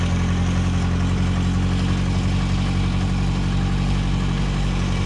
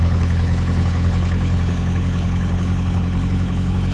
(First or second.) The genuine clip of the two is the first